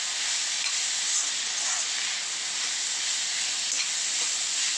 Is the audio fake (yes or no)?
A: no